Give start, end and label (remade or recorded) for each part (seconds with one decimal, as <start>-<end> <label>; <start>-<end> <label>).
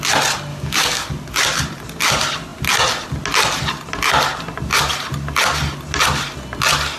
0.0-0.5 recorded; 0.5-1.1 remade; 1.1-7.0 recorded